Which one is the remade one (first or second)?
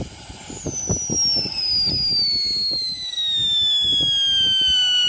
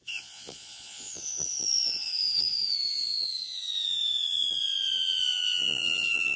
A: second